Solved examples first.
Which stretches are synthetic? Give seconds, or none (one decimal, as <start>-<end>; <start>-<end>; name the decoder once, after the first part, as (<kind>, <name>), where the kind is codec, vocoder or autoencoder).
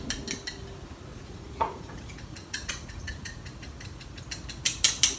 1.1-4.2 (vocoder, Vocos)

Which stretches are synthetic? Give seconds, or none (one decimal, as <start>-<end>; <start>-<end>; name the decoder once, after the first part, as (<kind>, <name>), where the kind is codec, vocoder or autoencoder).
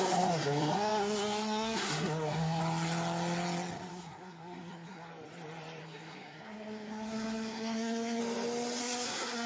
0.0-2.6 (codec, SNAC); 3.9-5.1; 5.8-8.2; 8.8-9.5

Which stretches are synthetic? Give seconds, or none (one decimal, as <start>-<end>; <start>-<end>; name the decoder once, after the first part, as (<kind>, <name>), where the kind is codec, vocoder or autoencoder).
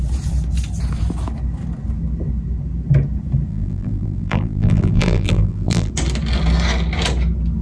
3.5-5.9 (vocoder, BigVGAN v2)